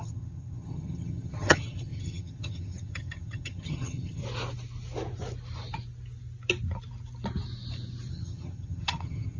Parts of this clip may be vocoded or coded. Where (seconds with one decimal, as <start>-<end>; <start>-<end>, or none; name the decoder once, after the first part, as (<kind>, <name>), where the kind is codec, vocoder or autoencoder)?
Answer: 0.0-4.2 (vocoder, HiFi-GAN); 8.1-9.4